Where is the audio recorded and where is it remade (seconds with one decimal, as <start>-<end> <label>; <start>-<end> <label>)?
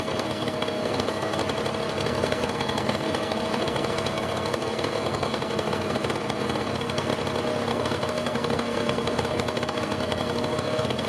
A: 0.0-1.4 remade; 1.4-1.9 recorded; 1.9-7.1 remade; 7.1-7.7 recorded; 7.7-11.1 remade